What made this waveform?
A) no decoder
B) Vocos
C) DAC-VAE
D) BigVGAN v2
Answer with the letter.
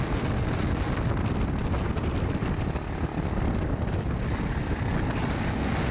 A